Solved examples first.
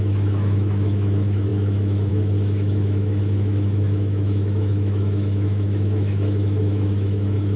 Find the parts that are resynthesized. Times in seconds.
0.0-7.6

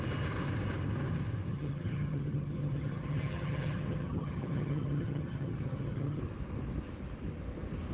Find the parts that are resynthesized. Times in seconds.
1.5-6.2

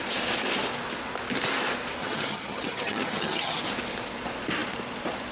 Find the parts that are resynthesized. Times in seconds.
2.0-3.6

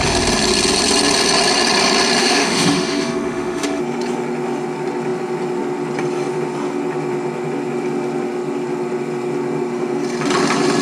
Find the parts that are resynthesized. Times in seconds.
2.2-3.8